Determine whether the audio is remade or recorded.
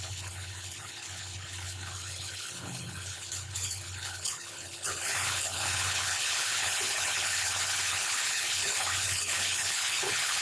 remade